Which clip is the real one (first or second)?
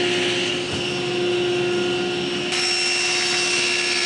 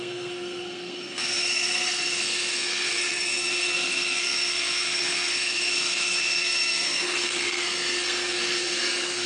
first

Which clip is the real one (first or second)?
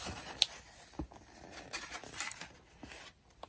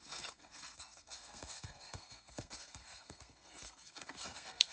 first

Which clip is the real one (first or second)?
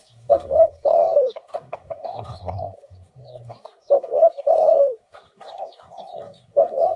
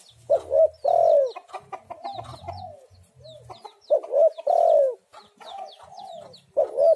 second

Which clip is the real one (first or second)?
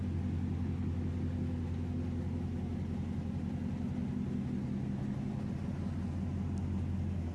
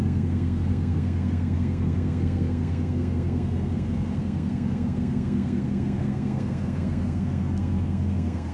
first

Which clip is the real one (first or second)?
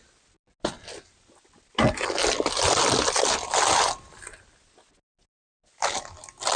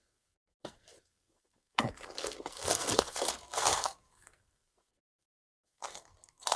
first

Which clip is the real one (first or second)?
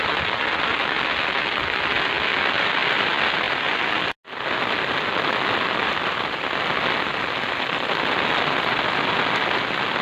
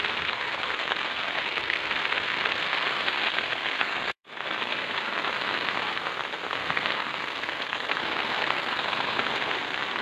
first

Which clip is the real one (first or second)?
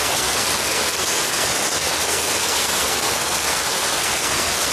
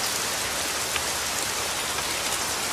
second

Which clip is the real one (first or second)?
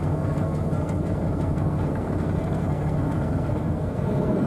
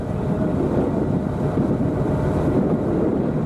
second